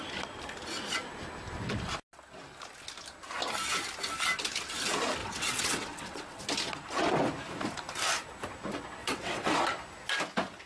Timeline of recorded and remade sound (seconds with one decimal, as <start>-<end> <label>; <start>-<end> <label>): 0.0-5.2 recorded; 5.2-6.4 remade; 6.4-9.0 recorded; 9.0-9.5 remade; 9.5-10.7 recorded